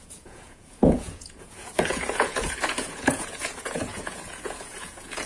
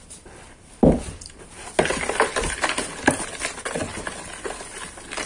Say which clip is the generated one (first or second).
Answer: first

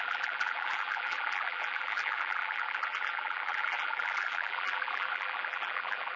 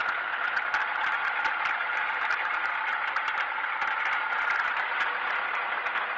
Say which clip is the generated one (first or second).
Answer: first